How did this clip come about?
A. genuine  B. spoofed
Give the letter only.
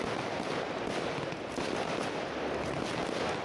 A